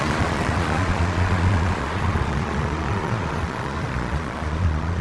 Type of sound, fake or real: fake